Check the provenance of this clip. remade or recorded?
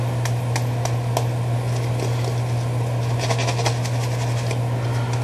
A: recorded